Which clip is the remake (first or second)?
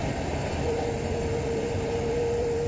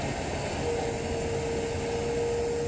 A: first